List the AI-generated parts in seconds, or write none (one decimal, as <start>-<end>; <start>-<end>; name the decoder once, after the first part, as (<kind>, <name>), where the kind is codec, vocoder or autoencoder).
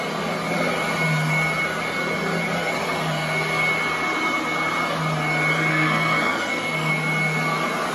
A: 5.7-6.9 (codec, SNAC)